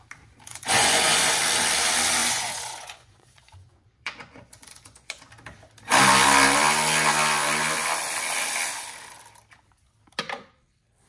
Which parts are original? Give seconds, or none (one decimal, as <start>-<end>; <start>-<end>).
0.0-0.5; 1.4-2.2; 5.2-11.1